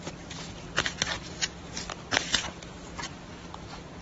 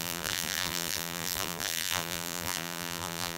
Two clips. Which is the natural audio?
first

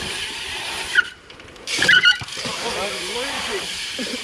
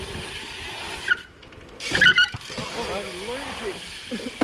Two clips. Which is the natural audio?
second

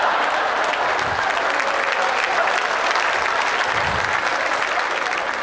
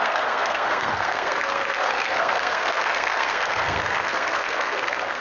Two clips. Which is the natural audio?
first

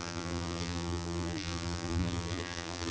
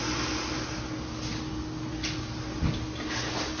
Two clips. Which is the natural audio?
second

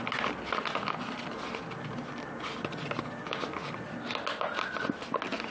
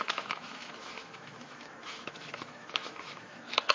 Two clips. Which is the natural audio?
first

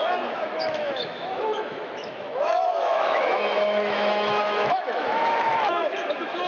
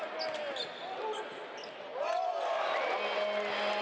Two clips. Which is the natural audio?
second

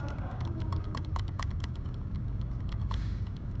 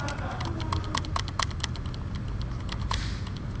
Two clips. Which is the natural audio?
second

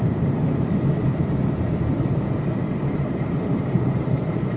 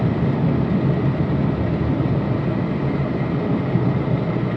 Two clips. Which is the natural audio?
second